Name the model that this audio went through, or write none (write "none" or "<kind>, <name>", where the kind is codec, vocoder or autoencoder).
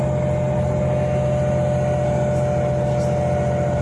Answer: none